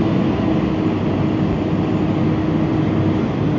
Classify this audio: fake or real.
real